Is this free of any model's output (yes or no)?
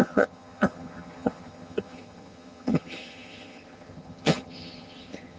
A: no